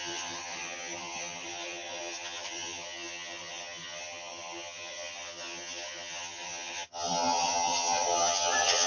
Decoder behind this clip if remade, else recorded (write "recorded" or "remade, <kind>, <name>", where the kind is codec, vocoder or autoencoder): remade, vocoder, HiFi-GAN